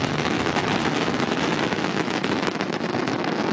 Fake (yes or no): yes